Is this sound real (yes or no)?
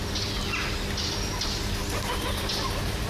yes